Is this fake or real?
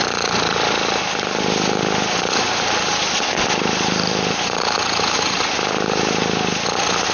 real